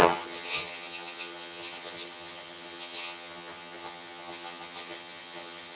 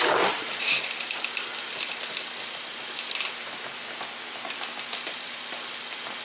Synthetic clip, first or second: first